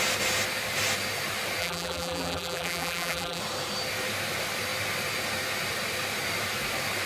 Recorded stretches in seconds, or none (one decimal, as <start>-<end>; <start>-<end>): 0.0-1.6; 3.4-7.1

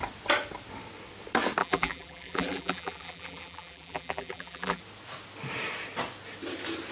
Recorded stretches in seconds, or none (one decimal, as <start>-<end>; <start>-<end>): 0.0-1.6; 4.8-6.9

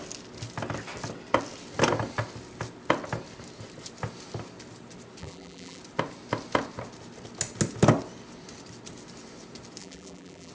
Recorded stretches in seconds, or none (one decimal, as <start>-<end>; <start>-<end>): 0.0-5.2; 5.8-9.8

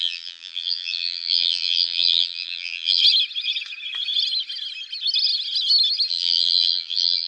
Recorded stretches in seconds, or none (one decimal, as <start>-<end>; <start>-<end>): 3.0-6.1

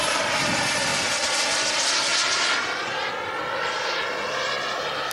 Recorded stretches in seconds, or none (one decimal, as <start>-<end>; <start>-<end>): 0.0-5.1